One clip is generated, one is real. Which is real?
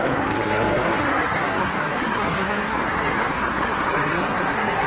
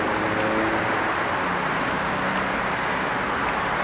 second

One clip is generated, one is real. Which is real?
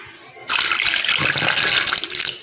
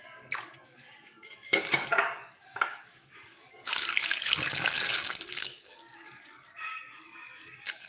first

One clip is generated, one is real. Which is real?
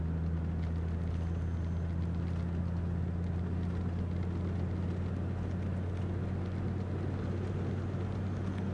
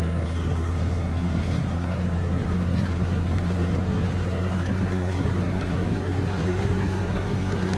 first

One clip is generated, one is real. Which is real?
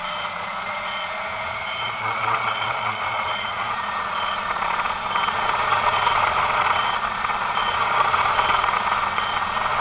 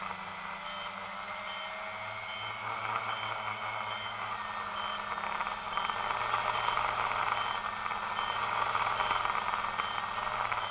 second